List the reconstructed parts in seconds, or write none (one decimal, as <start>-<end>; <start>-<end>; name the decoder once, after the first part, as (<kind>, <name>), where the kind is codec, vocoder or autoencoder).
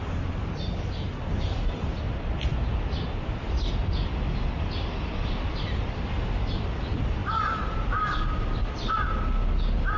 7.2-8.9 (vocoder, BigVGAN v2)